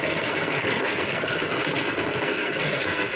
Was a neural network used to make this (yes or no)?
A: yes